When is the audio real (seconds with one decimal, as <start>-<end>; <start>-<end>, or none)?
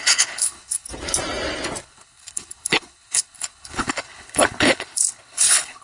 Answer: 0.9-1.8